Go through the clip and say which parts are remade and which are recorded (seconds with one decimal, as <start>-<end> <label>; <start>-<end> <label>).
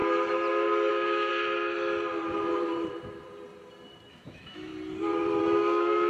0.0-0.9 recorded; 0.9-1.3 remade; 1.3-4.1 recorded; 4.1-4.7 remade; 4.7-5.4 recorded; 5.4-6.1 remade